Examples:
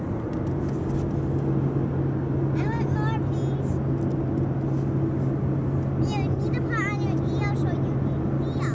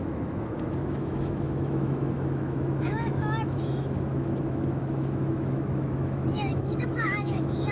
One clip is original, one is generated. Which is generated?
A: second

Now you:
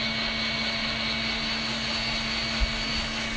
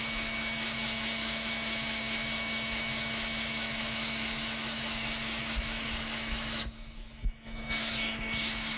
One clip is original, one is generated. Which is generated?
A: second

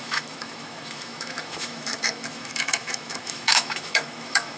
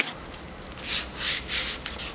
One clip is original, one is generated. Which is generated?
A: first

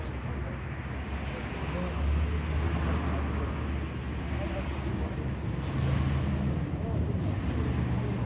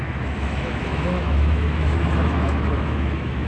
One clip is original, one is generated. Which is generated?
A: second